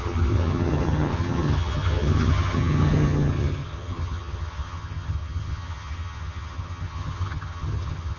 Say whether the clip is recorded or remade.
remade